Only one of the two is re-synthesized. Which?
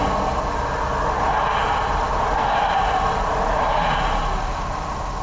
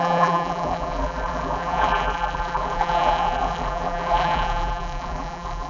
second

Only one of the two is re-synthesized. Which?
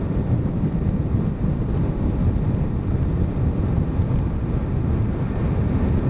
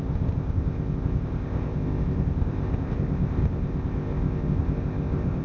second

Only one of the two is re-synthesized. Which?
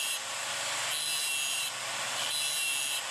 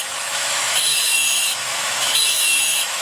second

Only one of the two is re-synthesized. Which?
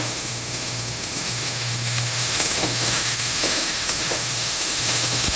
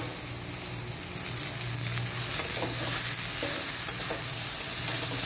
first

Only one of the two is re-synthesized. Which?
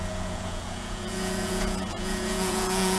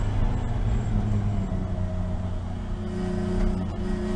first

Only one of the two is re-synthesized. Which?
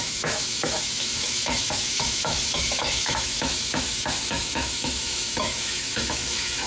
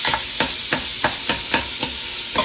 first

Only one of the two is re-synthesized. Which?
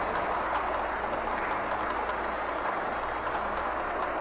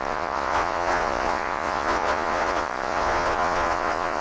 second